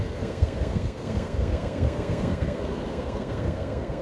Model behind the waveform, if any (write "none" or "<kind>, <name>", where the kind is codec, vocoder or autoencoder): codec, SNAC